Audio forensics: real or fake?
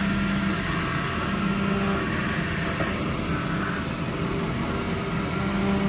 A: real